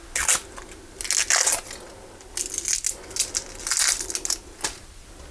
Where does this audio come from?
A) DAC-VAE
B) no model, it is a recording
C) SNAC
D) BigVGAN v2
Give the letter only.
B